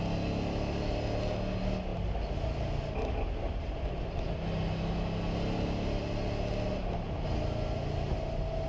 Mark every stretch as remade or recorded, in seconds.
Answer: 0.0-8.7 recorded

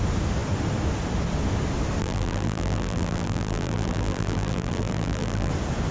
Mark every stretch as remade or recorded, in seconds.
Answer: 0.0-2.0 recorded; 2.0-5.5 remade; 5.5-5.9 recorded